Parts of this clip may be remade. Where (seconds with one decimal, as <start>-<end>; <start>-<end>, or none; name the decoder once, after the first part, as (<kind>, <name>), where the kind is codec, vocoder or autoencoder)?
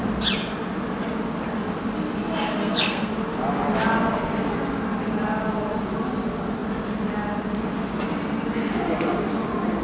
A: 2.6-3.1 (codec, SNAC)